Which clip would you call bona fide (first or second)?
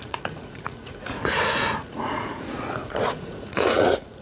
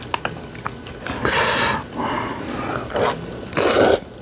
second